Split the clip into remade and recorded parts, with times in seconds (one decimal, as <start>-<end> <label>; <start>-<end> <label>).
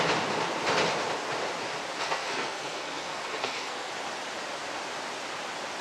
0.0-2.0 recorded; 2.0-3.9 remade; 3.9-5.8 recorded